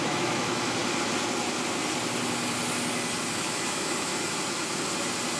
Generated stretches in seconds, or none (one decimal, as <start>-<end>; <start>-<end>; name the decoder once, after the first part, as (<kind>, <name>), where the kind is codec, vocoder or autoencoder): 0.0-0.8 (autoencoder, DAC-VAE); 3.3-4.1